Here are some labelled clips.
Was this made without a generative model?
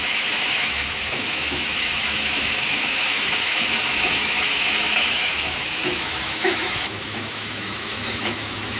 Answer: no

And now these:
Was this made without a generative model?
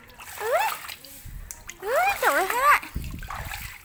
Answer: yes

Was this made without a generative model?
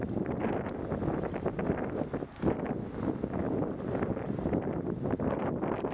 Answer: yes